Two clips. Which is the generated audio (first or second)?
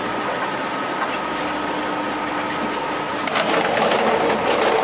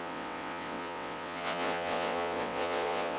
second